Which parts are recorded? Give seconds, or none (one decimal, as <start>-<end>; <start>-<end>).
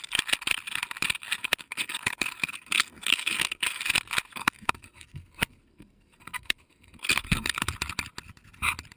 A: 0.0-1.4; 3.8-4.3; 7.7-9.0